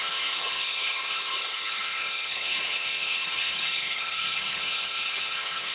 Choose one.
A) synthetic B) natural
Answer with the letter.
A